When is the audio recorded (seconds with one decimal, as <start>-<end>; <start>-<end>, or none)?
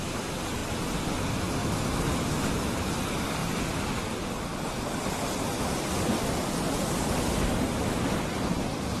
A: none